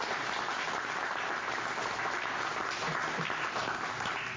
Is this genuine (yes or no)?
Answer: yes